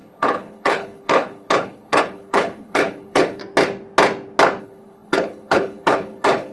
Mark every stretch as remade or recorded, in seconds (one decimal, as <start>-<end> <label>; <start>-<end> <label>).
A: 0.0-3.4 remade; 3.4-4.6 recorded; 4.6-6.5 remade